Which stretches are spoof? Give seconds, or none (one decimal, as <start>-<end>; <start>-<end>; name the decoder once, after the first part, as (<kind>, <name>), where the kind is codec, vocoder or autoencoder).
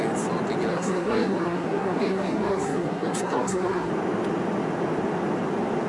0.7-3.9 (codec, SNAC)